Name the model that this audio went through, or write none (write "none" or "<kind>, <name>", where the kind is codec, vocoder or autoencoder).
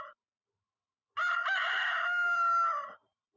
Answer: none